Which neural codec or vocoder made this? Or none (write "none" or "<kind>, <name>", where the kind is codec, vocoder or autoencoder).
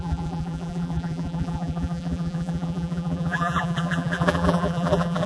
vocoder, BigVGAN v2